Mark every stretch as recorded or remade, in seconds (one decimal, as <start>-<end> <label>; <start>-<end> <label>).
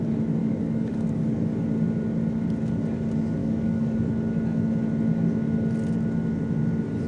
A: 0.0-0.4 recorded; 0.4-1.6 remade; 1.6-3.4 recorded; 3.4-4.1 remade; 4.1-7.1 recorded